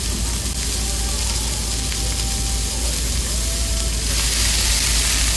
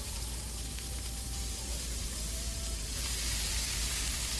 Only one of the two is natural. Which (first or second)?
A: first